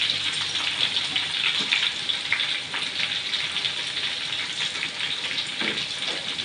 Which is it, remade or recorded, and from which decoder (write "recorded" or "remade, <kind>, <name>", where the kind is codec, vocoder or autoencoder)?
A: recorded